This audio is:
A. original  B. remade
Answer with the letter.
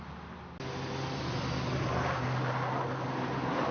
A